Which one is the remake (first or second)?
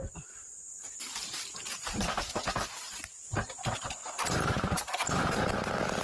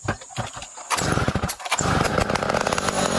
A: first